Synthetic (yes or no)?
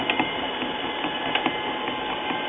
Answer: no